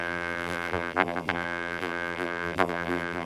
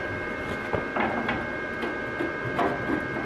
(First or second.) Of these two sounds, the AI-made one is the first